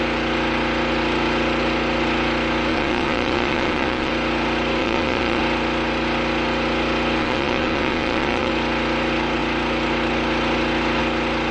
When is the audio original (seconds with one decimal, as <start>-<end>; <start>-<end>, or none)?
0.0-2.7; 4.1-4.8; 5.4-7.2; 8.5-11.5